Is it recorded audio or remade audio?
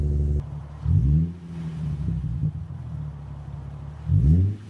recorded